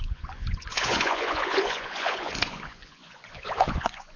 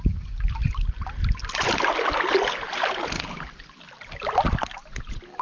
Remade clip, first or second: first